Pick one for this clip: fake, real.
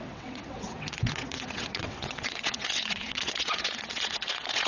fake